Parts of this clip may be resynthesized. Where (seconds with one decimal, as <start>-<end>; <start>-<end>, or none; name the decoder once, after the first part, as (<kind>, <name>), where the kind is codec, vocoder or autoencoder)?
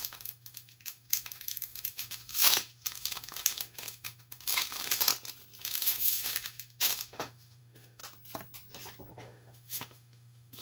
0.0-5.1 (autoencoder, DAC-VAE); 5.6-8.0; 9.1-10.6